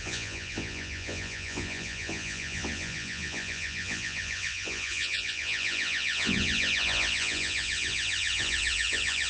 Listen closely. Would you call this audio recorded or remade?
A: remade